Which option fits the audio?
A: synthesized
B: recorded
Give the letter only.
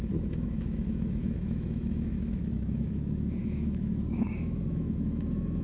A